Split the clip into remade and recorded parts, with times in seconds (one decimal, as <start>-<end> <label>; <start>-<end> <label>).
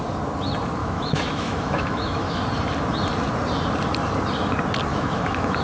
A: 0.0-0.8 recorded; 0.8-2.4 remade; 2.4-4.9 recorded; 4.9-5.6 remade